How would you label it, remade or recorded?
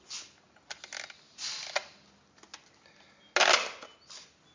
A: recorded